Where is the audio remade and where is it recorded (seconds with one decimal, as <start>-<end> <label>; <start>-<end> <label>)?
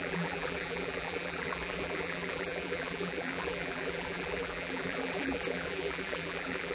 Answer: 0.0-6.7 remade